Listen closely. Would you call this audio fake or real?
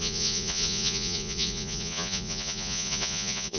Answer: fake